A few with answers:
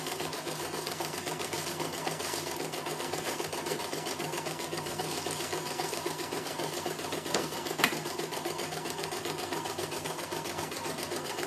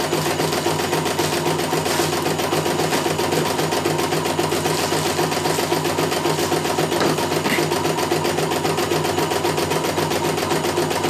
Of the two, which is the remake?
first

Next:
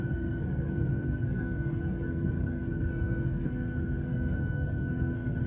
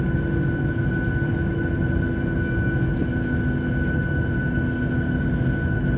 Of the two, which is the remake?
first